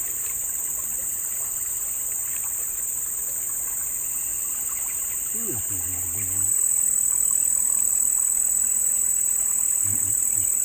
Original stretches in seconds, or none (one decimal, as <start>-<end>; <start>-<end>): 0.0-10.6